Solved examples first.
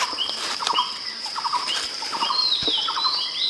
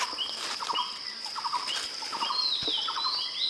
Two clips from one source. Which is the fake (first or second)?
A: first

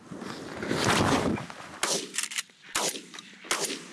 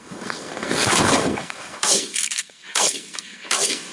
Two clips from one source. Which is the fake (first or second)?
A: second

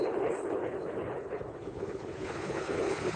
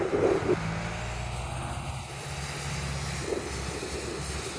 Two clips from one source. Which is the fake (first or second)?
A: first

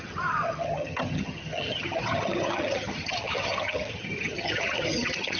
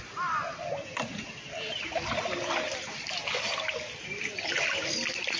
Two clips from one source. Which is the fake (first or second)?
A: first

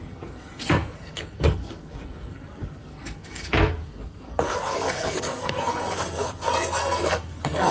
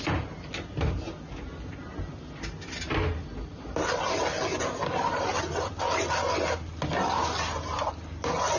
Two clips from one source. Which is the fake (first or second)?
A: first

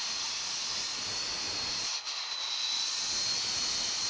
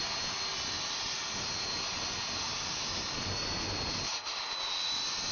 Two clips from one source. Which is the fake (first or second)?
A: first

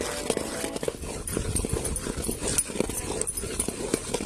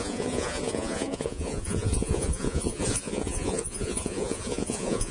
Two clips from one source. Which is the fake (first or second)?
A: second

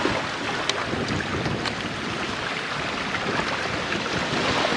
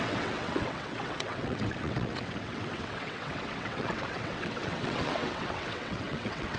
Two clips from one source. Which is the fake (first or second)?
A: second